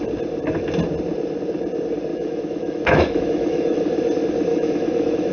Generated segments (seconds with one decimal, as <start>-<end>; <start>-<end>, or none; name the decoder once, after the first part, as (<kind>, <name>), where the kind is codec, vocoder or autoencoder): 2.1-3.8 (autoencoder, DAC-VAE); 4.5-5.3

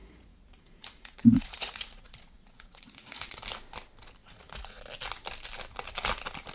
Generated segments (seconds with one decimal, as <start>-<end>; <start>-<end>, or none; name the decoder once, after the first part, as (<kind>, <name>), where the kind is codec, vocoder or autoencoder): 0.0-3.3 (vocoder, Vocos); 4.2-4.8

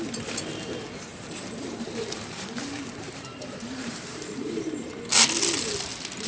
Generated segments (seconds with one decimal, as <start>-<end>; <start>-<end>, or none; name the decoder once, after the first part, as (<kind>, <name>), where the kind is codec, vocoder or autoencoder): 1.1-4.9 (vocoder, BigVGAN v2)

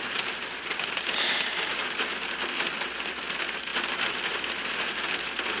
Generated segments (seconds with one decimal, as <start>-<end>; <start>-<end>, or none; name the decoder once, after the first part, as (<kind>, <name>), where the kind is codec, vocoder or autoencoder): none

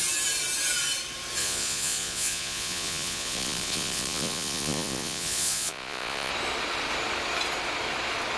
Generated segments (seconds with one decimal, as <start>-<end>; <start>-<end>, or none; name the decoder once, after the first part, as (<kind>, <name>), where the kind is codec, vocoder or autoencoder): 1.4-6.3 (vocoder, Vocos)

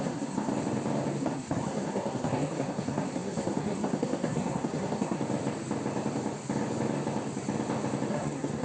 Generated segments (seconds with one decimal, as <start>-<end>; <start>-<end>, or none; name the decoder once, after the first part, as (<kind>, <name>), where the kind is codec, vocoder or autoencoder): 0.0-0.5 (codec, SNAC); 1.2-5.2; 8.1-8.6

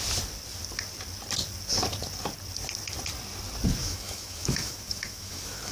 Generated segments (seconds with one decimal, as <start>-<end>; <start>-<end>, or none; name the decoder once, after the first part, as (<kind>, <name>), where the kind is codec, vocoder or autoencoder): 3.8-5.7 (autoencoder, DAC-VAE)